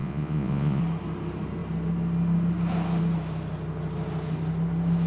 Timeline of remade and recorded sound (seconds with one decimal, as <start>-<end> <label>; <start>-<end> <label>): 0.0-0.8 remade; 0.8-5.1 recorded